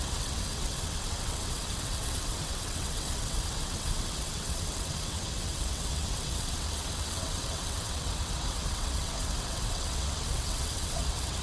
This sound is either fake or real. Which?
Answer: fake